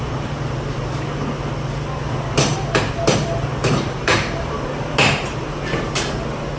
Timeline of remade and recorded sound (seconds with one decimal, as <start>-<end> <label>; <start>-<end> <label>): 0.0-3.6 recorded; 3.6-5.8 remade; 5.8-6.6 recorded